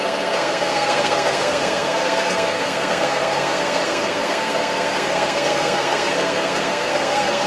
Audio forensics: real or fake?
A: fake